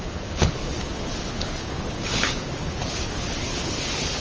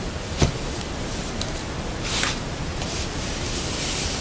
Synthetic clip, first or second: first